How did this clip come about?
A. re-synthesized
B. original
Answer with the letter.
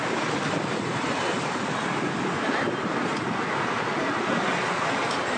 B